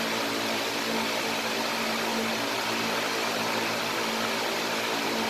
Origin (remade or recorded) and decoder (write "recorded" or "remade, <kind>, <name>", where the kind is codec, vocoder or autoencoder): recorded